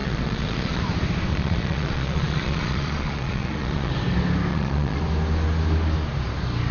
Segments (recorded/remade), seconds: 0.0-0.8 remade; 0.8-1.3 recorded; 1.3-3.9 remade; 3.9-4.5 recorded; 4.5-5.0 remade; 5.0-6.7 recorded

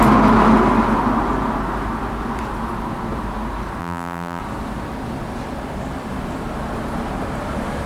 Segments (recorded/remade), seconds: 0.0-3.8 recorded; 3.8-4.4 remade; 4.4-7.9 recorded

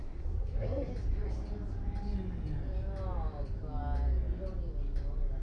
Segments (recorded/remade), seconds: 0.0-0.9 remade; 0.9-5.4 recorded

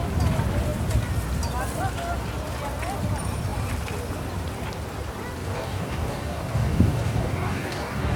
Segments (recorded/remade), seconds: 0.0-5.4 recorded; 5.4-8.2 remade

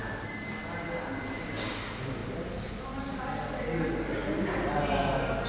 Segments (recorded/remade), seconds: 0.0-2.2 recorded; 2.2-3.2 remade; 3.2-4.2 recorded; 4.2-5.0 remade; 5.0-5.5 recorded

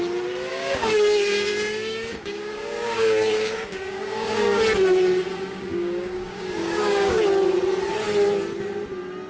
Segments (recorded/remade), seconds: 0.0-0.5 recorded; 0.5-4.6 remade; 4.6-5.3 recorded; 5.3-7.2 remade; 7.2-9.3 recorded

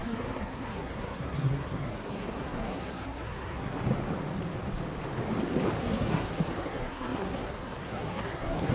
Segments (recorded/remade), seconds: 0.0-3.8 remade; 3.8-5.8 recorded; 5.8-8.7 remade

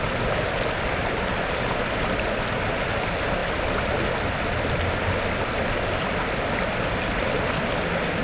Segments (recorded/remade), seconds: 0.0-8.2 recorded